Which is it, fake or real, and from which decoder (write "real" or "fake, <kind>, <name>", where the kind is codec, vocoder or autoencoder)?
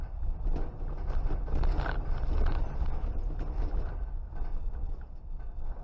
real